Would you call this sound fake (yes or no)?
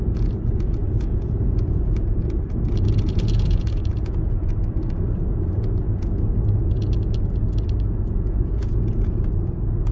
yes